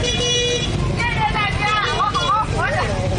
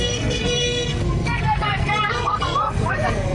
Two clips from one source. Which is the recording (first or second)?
first